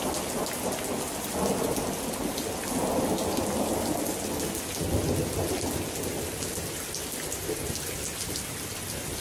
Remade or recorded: recorded